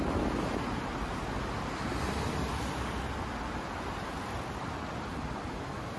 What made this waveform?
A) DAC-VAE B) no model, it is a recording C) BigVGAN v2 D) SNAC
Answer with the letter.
B